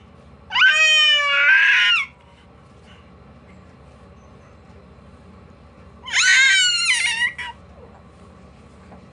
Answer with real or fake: real